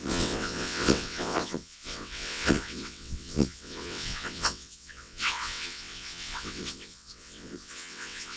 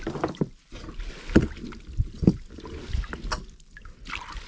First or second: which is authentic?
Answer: second